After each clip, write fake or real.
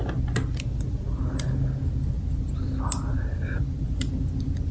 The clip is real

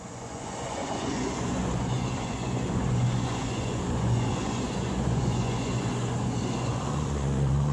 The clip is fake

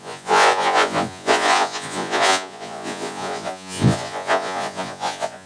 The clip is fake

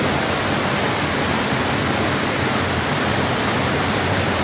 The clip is real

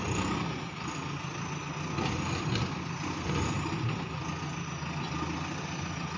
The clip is real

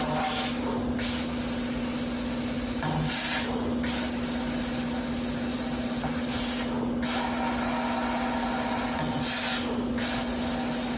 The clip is real